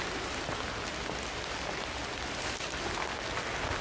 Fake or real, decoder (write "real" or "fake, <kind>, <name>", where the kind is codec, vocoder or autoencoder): real